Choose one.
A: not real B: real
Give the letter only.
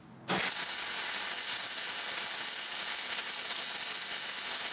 B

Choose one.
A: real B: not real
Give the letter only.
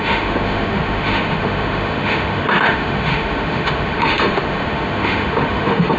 B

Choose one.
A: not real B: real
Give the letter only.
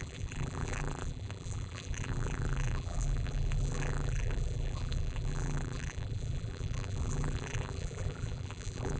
A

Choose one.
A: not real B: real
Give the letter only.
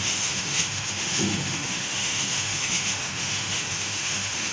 A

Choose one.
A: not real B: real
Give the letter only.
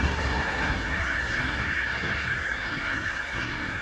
A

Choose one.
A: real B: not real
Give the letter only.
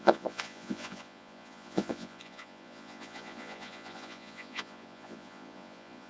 B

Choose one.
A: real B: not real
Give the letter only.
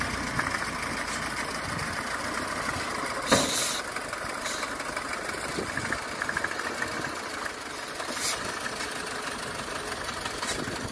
A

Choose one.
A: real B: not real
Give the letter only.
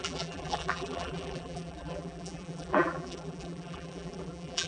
B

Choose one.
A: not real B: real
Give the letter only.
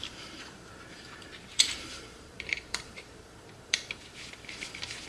A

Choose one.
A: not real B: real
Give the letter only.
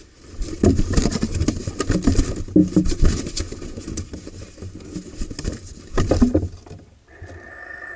B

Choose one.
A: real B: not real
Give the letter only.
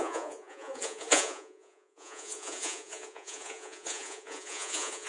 B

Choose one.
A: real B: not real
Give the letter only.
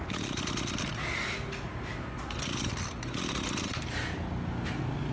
A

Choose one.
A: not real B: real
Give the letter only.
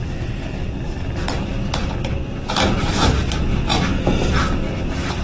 B